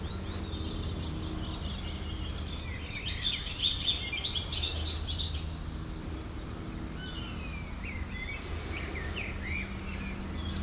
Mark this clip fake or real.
real